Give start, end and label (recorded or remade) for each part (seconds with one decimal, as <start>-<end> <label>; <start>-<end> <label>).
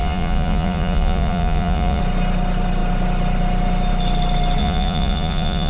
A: 0.0-2.0 remade; 2.0-4.6 recorded; 4.6-5.7 remade